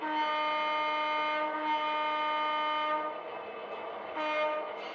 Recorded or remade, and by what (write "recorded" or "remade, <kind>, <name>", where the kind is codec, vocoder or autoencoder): recorded